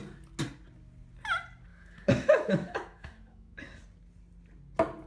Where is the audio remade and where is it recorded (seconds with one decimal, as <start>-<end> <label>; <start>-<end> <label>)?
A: 0.0-1.7 recorded; 1.7-3.6 remade; 3.6-5.1 recorded